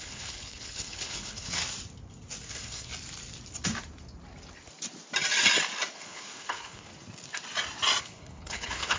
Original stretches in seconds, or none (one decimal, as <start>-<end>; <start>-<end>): 1.6-2.5; 2.9-5.9; 6.9-8.0

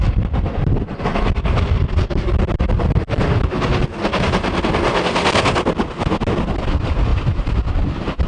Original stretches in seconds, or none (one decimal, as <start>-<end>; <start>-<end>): 0.0-8.3

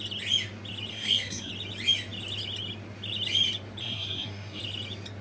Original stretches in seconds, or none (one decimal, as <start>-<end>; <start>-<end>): 0.0-0.9; 1.5-3.8; 4.6-5.2

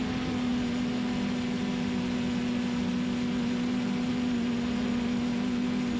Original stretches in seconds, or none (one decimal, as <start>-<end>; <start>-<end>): 0.0-6.0

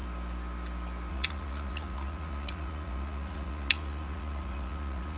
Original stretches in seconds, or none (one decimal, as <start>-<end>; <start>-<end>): 0.0-1.1

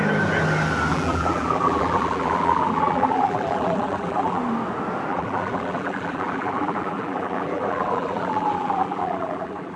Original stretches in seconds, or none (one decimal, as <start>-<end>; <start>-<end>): 0.0-0.9; 4.4-5.1